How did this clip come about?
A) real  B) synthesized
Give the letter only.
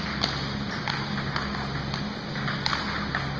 A